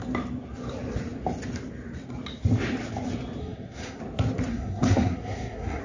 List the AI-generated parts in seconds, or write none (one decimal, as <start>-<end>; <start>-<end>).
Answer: 3.4-4.0; 4.5-5.8